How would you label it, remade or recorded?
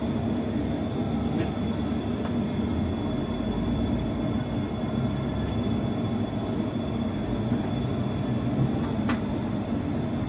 recorded